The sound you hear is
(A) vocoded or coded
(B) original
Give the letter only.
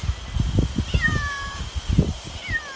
B